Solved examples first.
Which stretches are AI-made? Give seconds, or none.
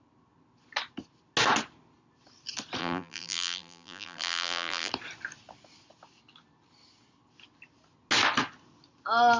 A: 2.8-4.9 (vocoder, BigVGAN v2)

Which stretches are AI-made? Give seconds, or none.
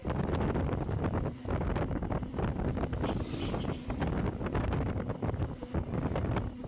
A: 0.0-6.7 (vocoder, BigVGAN v2)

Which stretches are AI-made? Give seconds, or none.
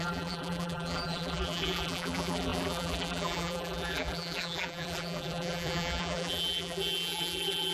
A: 0.0-7.7 (vocoder, BigVGAN v2)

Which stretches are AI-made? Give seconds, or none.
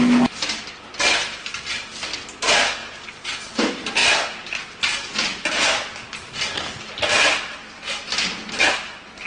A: 2.8-3.5 (vocoder, BigVGAN v2); 4.0-4.6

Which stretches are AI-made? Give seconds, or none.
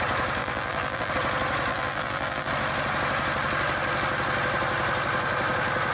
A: 0.4-1.1 (vocoder, BigVGAN v2); 1.7-2.5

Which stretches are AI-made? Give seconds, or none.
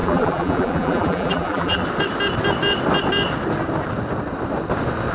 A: 0.0-1.8 (vocoder, BigVGAN v2)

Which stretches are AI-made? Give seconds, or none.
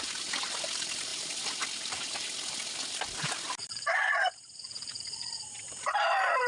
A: 0.0-6.5 (vocoder, BigVGAN v2)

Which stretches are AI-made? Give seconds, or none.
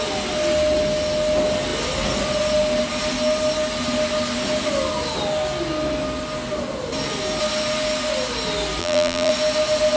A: 8.8-9.3 (vocoder, BigVGAN v2)